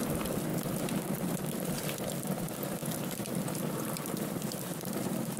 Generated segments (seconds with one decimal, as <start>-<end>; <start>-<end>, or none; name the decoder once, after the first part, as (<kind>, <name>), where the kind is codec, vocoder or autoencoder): none